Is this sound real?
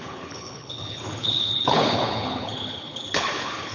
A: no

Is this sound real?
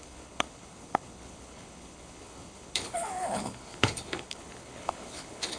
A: no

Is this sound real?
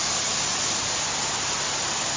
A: yes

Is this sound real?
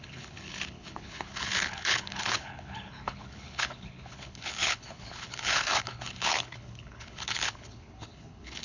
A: no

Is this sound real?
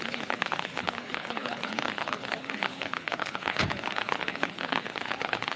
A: no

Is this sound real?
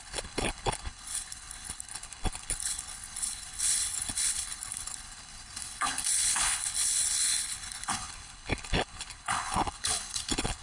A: no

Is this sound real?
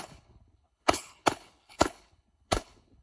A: no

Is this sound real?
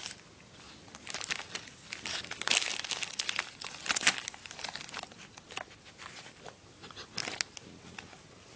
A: yes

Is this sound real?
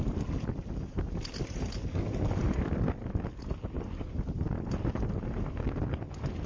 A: yes